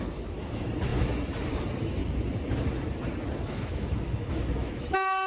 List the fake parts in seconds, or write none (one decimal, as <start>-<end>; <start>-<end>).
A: 0.0-2.0; 3.4-5.3